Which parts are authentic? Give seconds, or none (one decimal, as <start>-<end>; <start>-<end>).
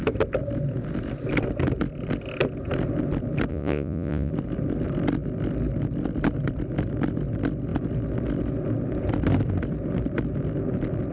0.0-3.5; 4.3-11.1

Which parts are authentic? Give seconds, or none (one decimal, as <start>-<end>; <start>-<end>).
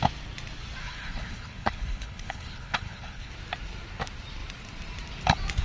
0.0-0.8; 3.3-5.6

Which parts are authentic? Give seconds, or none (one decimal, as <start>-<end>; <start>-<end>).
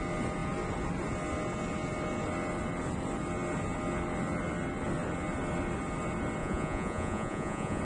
0.0-6.4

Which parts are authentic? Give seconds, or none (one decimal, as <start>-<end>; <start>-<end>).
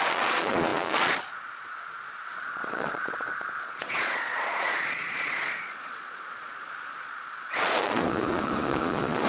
none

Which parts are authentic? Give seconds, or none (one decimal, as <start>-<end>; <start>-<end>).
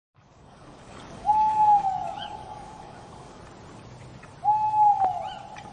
3.4-5.7